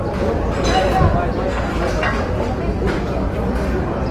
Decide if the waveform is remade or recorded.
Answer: recorded